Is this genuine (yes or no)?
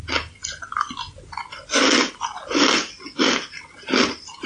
yes